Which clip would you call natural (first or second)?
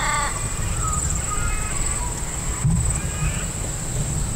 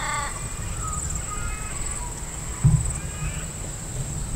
second